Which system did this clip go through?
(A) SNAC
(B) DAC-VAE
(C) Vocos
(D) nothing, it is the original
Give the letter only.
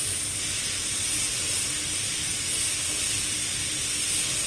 D